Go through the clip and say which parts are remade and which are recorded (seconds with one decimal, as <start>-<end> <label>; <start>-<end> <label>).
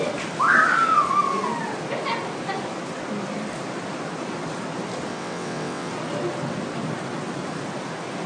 0.0-5.1 recorded; 5.1-5.9 remade; 5.9-8.3 recorded